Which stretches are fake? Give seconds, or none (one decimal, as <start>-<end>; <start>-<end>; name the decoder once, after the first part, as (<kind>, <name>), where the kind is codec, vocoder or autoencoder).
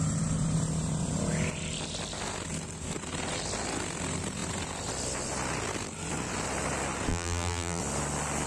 7.1-7.8 (vocoder, BigVGAN v2)